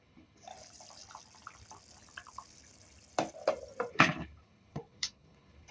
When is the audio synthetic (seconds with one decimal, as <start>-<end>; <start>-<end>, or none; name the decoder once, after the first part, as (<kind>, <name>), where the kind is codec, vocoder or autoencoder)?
0.0-0.5 (codec, HILCodec); 3.9-5.7